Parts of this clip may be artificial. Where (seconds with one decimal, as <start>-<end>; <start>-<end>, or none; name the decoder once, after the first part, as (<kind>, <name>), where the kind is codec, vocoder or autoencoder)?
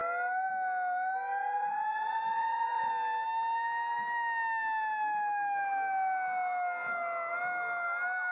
1.4-2.9 (vocoder, Vocos)